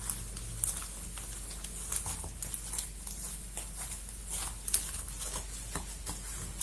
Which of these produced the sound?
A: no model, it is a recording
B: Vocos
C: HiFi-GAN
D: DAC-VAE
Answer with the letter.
A